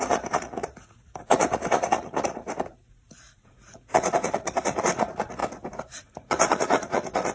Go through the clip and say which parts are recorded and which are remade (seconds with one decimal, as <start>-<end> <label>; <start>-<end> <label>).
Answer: 0.0-5.4 remade; 5.4-5.9 recorded; 5.9-7.3 remade